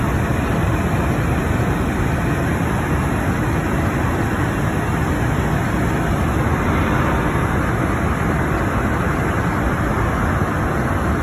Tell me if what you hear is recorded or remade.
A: recorded